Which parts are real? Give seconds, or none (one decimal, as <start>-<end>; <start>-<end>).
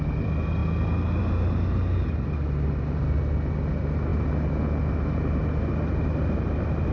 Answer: 0.0-6.9